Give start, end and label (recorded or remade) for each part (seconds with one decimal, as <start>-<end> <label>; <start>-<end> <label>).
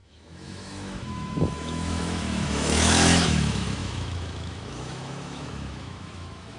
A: 0.0-6.6 remade